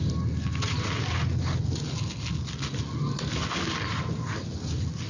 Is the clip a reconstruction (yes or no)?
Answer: no